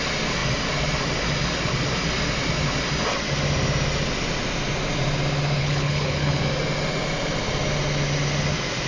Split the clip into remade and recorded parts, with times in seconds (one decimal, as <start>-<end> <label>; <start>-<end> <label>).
0.0-5.6 recorded; 5.6-6.4 remade; 6.4-8.9 recorded